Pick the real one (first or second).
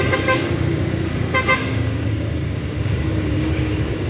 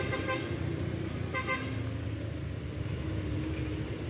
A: second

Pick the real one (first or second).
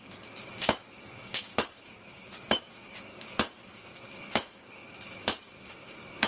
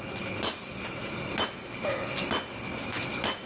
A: second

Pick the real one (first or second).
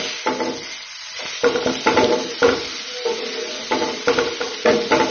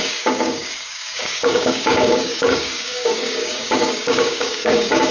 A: first